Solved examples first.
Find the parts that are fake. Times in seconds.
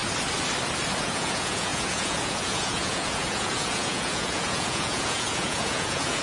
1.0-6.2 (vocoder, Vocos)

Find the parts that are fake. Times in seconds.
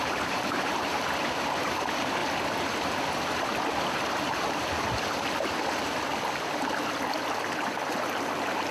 0.0-2.2 (vocoder, BigVGAN v2); 7.4-8.7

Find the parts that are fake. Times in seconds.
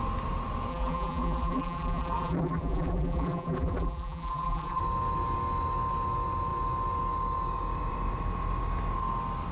0.7-4.8 (vocoder, BigVGAN v2)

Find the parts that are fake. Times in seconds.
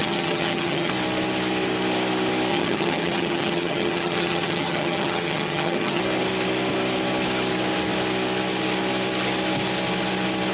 0.0-0.9 (vocoder, HiFi-GAN); 2.5-6.0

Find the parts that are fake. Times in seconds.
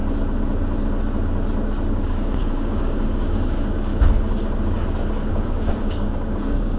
1.9-3.9 (codec, DAC); 5.3-6.8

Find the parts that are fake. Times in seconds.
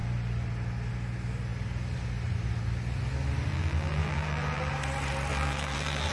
3.5-4.7 (vocoder, BigVGAN v2); 5.3-6.1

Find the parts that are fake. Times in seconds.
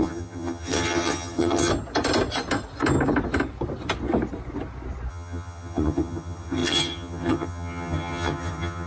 0.0-1.7 (vocoder, HiFi-GAN); 5.1-8.9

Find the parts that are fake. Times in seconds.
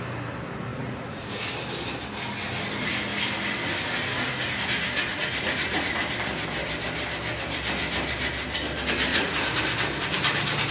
0.7-1.3 (vocoder, Vocos); 5.1-6.0; 9.1-9.6